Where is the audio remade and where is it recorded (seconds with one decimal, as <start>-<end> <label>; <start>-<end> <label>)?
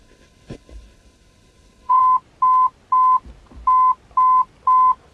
0.0-2.0 remade; 2.0-5.1 recorded